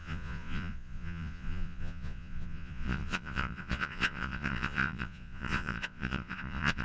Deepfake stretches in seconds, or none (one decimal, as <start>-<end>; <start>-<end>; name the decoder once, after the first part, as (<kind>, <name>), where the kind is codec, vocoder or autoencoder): 0.0-6.8 (vocoder, Vocos)